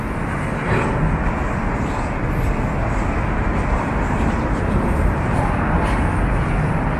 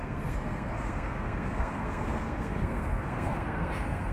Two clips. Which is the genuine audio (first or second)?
first